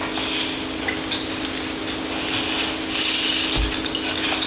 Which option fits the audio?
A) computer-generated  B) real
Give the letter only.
B